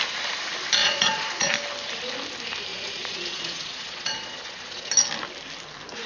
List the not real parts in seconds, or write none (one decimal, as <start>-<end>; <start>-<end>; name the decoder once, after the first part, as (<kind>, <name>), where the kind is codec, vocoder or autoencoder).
0.8-1.5 (vocoder, Vocos); 2.7-4.9